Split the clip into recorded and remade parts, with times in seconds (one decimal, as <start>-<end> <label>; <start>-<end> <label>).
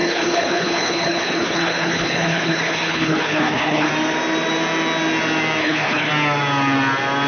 0.0-3.9 remade; 3.9-5.6 recorded; 5.6-6.1 remade; 6.1-7.3 recorded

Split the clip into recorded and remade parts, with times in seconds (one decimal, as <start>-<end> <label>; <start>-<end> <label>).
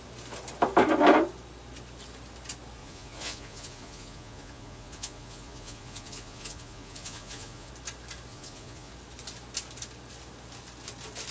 0.0-2.8 recorded; 2.8-7.7 remade; 7.7-8.3 recorded; 8.3-8.9 remade; 8.9-11.3 recorded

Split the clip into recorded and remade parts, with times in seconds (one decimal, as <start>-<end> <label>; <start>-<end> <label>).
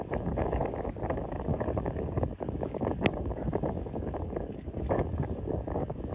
0.0-0.6 remade; 0.6-1.1 recorded; 1.1-6.1 remade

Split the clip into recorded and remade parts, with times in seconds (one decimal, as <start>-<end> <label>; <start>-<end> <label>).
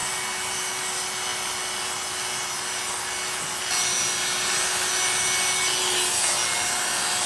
0.0-7.3 recorded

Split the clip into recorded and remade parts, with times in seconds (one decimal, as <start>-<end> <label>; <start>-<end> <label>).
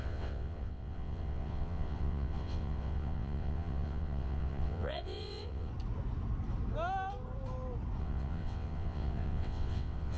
0.0-5.7 remade; 5.7-8.0 recorded; 8.0-10.2 remade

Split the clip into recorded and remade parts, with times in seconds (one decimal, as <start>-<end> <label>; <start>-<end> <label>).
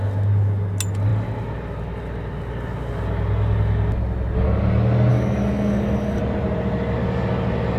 0.0-5.1 recorded; 5.1-6.2 remade; 6.2-7.8 recorded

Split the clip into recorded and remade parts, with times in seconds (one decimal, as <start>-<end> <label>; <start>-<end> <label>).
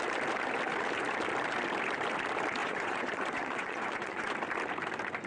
0.0-2.6 recorded; 2.6-4.3 remade; 4.3-5.3 recorded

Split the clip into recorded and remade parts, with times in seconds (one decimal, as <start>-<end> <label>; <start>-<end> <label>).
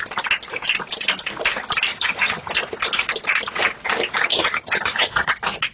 0.0-1.9 recorded; 1.9-2.5 remade; 2.5-4.3 recorded; 4.3-5.3 remade; 5.3-5.7 recorded